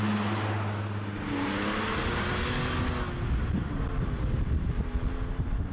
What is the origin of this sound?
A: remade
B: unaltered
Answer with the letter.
B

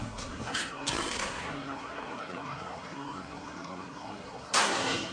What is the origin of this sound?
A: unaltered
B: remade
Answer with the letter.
B